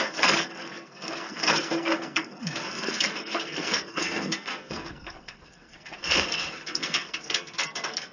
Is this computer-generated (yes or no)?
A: yes